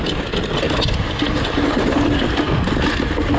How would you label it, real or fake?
real